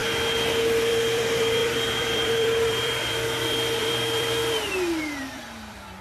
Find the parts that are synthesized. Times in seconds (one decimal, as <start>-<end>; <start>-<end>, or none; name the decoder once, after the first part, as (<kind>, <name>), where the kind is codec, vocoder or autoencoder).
0.8-6.0 (vocoder, BigVGAN v2)